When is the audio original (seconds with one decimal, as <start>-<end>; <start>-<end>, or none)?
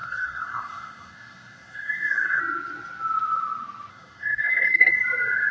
2.4-3.9; 4.9-5.5